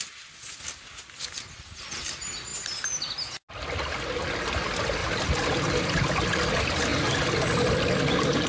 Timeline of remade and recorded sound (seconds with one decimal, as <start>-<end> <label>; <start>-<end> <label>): 0.0-8.5 recorded